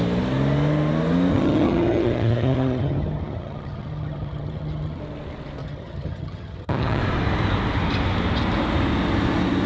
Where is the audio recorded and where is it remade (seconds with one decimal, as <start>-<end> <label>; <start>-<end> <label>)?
0.0-1.3 recorded; 1.3-5.0 remade; 5.0-5.6 recorded; 5.6-7.0 remade; 7.0-9.7 recorded